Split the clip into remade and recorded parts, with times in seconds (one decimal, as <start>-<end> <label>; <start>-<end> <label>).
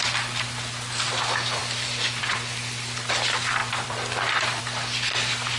0.0-1.6 recorded; 1.6-2.2 remade; 2.2-3.6 recorded; 3.6-4.6 remade; 4.6-5.6 recorded